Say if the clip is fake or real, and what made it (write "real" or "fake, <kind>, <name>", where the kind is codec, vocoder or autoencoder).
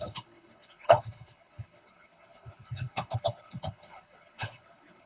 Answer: fake, codec, HILCodec